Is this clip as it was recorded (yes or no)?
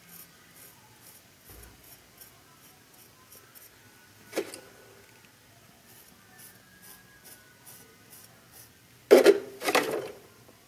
yes